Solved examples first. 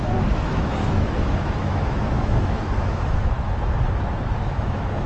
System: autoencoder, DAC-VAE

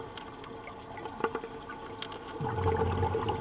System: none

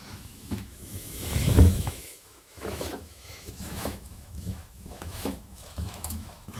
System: autoencoder, DAC-VAE